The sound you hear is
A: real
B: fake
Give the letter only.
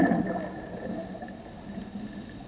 A